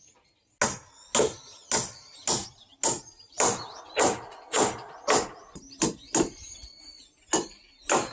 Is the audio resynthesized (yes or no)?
no